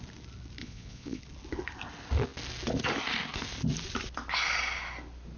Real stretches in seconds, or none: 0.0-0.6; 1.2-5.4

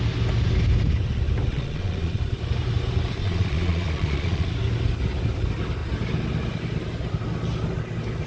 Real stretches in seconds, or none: 0.0-1.5; 2.2-3.2; 4.5-8.3

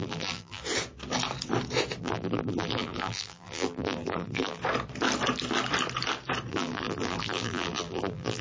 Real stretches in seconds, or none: 0.6-2.0; 4.6-6.5

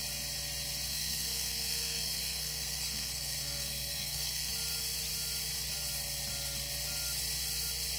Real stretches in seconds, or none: 0.0-0.9; 4.5-8.0

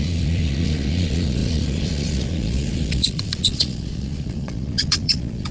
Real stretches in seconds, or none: none